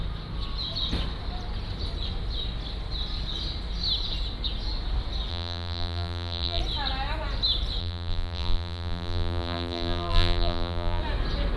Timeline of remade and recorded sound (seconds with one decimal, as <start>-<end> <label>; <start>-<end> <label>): 0.0-5.3 recorded; 5.3-6.6 remade; 6.6-7.8 recorded; 7.8-11.0 remade; 11.0-11.6 recorded